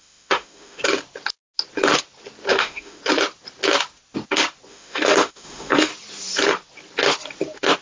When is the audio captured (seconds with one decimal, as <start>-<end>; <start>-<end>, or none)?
0.8-2.5; 3.0-4.7; 5.9-7.8